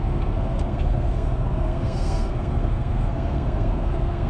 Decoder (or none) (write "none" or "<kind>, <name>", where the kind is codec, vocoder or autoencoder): codec, SNAC